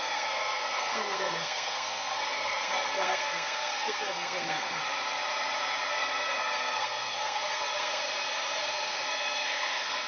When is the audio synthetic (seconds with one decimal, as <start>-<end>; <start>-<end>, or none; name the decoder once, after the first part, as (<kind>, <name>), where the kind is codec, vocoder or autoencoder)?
0.0-4.8 (codec, SNAC); 5.9-8.0; 8.6-10.1